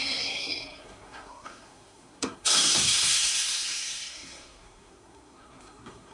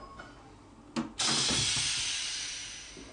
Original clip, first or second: second